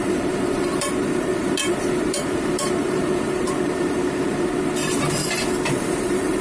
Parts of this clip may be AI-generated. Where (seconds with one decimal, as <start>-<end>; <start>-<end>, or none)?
0.0-5.2; 5.7-6.4